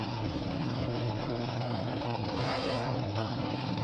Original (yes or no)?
no